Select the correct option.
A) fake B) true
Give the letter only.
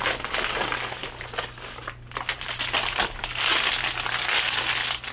B